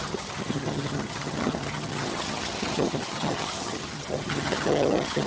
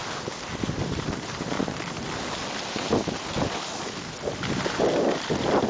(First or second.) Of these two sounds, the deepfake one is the first